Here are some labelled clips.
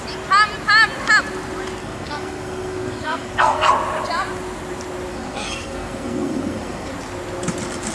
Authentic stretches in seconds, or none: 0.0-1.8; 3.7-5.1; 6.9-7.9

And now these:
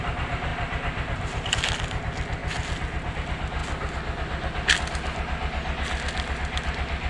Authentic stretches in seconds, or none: 0.0-7.1